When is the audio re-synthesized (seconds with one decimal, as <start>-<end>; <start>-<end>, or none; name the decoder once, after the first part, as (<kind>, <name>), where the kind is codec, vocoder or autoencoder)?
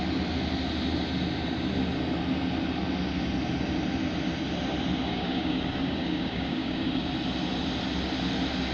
5.1-7.0 (codec, DAC)